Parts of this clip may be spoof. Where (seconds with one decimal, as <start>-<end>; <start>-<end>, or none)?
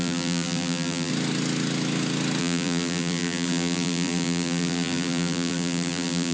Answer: 0.0-1.1; 2.4-6.3